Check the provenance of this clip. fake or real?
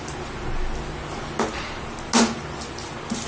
real